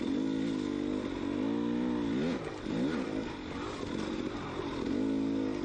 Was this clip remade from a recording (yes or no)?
no